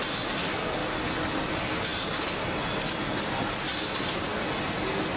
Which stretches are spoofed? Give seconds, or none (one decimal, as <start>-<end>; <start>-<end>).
none